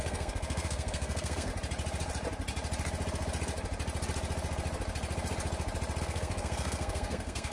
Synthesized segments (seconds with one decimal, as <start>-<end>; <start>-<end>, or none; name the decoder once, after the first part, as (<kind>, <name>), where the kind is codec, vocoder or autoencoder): 0.0-1.5 (codec, SNAC); 6.0-7.5